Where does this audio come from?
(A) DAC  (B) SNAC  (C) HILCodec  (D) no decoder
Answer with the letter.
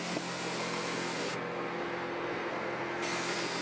B